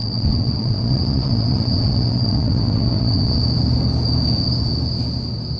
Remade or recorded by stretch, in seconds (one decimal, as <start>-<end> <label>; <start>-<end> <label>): 0.0-3.4 remade; 3.4-5.6 recorded

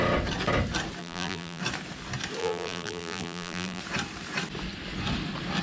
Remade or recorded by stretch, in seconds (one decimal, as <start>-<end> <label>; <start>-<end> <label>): 0.0-1.0 recorded; 1.0-1.6 remade; 1.6-2.4 recorded; 2.4-3.8 remade; 3.8-5.6 recorded

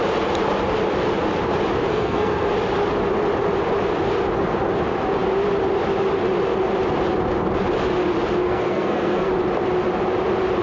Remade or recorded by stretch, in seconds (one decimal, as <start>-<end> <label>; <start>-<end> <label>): 0.0-1.9 recorded; 1.9-2.5 remade; 2.5-8.4 recorded; 8.4-9.3 remade; 9.3-10.6 recorded

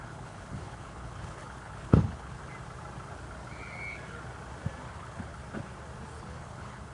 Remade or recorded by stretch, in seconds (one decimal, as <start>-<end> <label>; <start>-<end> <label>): 0.0-2.4 remade; 2.4-4.9 recorded; 4.9-5.4 remade; 5.4-6.2 recorded; 6.2-6.9 remade